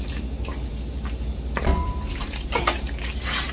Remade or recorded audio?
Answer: remade